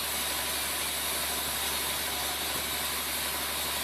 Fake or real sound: real